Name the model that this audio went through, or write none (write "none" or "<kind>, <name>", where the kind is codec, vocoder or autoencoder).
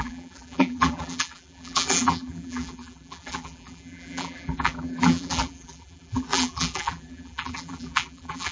vocoder, BigVGAN v2